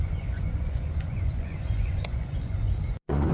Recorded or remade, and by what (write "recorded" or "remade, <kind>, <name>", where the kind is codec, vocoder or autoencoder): remade, vocoder, Vocos